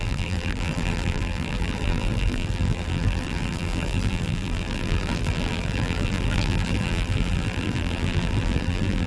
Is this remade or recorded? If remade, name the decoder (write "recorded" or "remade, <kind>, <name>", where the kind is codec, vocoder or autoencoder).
remade, vocoder, BigVGAN v2